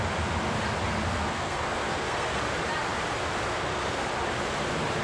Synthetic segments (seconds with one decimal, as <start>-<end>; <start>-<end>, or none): 1.1-2.4; 3.5-4.0